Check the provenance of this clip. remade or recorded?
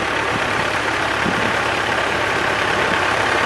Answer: remade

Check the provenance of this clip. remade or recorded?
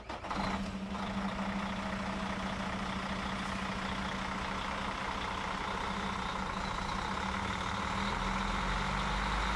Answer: recorded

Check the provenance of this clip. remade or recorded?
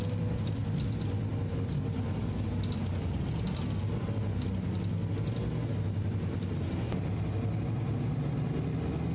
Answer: recorded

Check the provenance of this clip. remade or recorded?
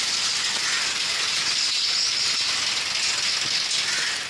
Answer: recorded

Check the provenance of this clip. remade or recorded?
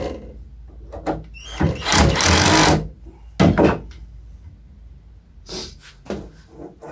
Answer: recorded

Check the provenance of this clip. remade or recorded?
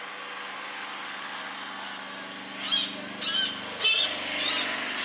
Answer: recorded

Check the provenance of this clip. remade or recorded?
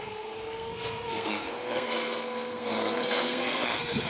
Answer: remade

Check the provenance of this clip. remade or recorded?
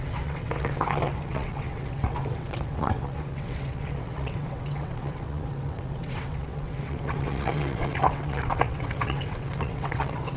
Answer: remade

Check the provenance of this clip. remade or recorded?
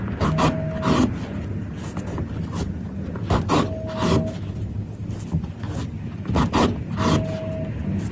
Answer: recorded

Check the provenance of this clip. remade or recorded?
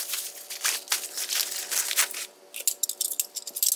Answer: recorded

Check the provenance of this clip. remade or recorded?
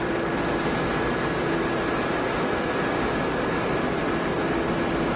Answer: recorded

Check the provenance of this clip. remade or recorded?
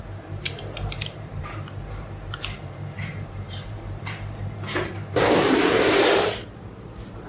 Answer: remade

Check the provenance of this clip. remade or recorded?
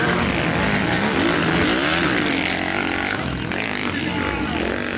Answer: recorded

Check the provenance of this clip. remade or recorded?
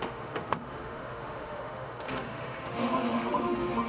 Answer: remade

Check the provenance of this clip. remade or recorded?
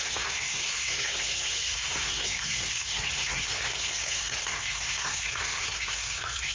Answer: remade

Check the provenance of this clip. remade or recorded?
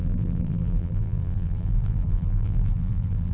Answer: remade